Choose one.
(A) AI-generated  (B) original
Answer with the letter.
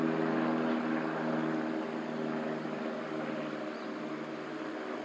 B